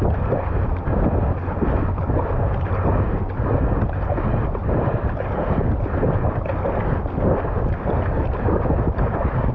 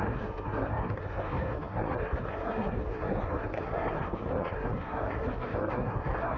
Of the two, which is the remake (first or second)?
second